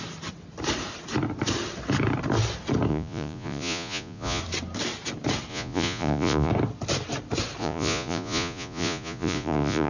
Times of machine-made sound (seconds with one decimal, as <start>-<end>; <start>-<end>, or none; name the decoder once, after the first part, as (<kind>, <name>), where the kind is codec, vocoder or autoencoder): 2.9-4.4 (vocoder, Vocos); 5.5-6.5; 7.6-9.9